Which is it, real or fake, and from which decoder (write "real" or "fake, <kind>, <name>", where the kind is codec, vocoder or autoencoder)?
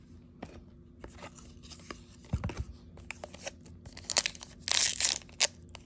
real